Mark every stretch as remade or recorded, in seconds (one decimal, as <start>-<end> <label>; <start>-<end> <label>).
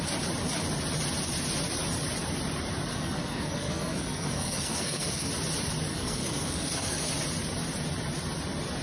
0.0-2.9 recorded; 2.9-5.3 remade; 5.3-5.9 recorded; 5.9-7.1 remade; 7.1-8.8 recorded